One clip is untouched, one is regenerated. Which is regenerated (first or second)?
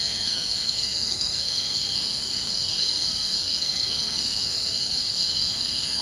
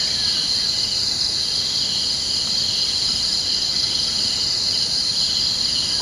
first